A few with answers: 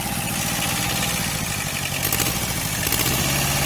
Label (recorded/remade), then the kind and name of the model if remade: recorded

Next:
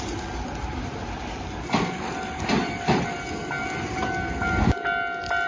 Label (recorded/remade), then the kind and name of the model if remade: recorded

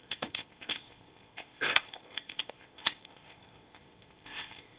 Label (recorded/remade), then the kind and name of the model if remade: remade, codec, ZipCodec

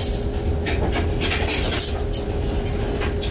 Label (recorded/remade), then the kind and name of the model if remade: recorded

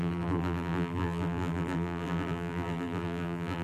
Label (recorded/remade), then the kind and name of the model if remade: remade, vocoder, BigVGAN v2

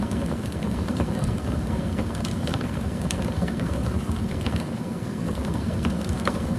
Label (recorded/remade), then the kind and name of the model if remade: remade, codec, SNAC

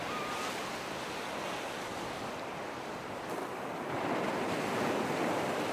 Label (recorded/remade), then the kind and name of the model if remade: recorded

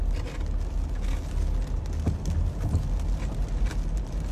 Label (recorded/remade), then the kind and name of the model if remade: recorded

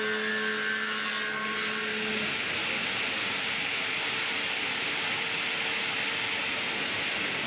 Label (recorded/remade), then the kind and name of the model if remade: recorded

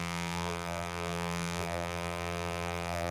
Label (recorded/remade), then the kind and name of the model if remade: remade, vocoder, BigVGAN v2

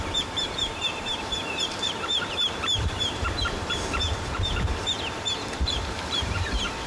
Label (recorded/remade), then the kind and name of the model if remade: remade, vocoder, BigVGAN v2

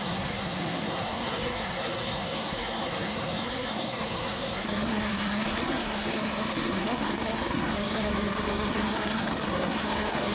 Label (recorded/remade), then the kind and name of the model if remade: remade, codec, SNAC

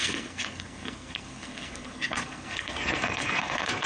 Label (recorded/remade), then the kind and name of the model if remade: remade, codec, SNAC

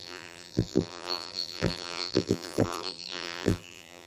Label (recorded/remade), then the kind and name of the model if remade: remade, vocoder, BigVGAN v2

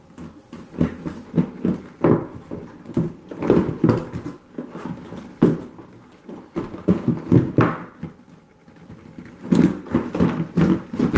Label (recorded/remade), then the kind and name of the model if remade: recorded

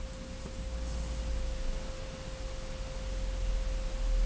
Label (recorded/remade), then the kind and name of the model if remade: recorded